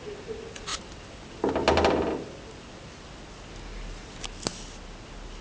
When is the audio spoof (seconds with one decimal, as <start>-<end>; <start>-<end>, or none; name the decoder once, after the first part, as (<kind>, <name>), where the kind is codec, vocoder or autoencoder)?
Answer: none